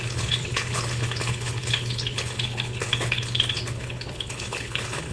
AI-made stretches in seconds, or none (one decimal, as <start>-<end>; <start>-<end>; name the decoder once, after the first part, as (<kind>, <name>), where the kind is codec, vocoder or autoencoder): 0.0-5.1 (codec, HILCodec)